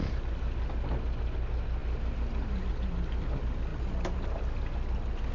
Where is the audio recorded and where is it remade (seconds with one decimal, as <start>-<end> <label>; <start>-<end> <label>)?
0.0-3.7 recorded; 3.7-5.3 remade